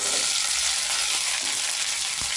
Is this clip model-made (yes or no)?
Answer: no